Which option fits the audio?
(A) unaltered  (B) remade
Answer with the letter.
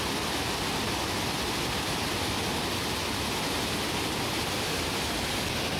A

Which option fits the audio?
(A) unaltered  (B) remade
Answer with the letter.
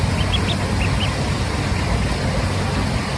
A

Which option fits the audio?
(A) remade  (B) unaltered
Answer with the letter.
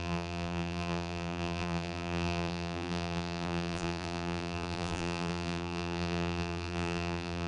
A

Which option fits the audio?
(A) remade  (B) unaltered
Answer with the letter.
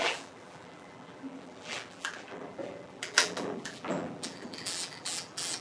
A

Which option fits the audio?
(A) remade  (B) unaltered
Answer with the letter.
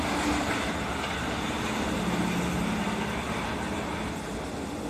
B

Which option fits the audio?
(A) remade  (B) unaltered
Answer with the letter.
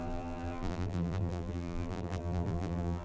A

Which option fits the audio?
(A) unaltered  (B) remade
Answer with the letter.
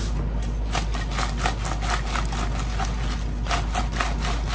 A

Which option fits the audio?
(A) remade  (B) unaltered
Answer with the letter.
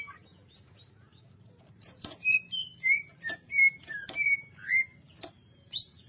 A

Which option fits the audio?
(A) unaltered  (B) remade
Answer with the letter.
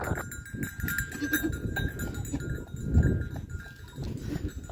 A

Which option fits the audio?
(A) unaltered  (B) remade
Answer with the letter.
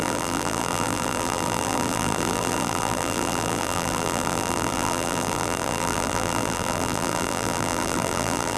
B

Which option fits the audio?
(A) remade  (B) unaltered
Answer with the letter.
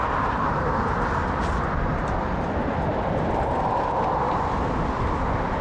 A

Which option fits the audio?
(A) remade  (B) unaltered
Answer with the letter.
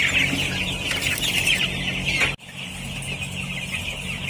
B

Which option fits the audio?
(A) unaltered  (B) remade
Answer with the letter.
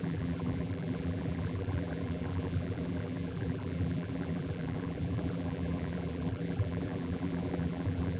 B